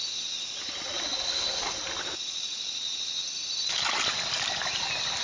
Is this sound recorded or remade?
recorded